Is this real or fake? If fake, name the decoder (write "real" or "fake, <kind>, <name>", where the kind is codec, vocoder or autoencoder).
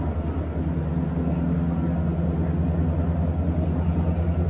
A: real